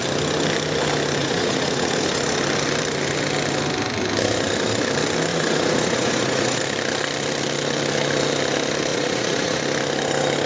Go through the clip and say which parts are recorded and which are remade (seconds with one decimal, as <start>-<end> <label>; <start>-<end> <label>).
0.0-1.2 recorded; 1.2-2.0 remade; 2.0-5.3 recorded; 5.3-6.6 remade; 6.6-8.9 recorded; 8.9-9.6 remade; 9.6-10.5 recorded